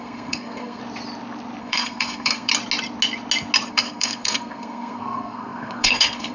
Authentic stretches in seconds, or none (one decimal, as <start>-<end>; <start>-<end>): 0.8-1.6; 2.5-3.7